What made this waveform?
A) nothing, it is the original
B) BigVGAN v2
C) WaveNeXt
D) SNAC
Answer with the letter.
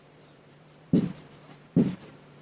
B